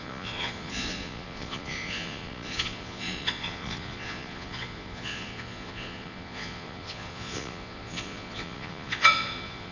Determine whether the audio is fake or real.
fake